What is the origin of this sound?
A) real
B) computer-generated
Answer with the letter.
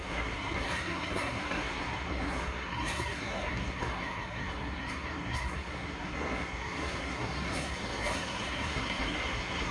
B